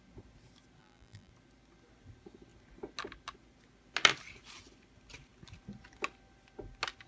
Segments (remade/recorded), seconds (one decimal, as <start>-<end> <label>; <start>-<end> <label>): 0.0-0.8 recorded; 0.8-1.3 remade; 1.3-7.1 recorded